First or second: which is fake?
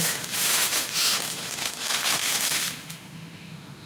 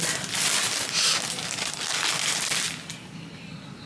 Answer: first